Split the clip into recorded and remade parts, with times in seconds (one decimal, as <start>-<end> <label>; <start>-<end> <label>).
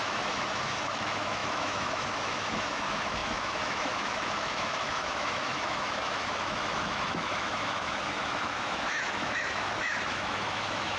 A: 0.0-11.0 remade